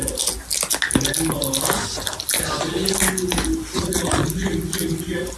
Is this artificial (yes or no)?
no